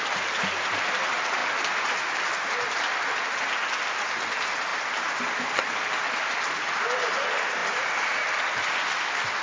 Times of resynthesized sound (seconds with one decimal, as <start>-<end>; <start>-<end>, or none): none